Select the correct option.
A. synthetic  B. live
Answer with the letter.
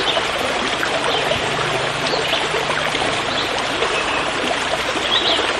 A